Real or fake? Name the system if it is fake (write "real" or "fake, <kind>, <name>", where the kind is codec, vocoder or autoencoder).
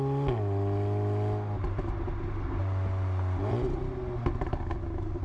real